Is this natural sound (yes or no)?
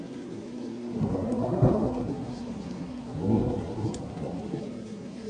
no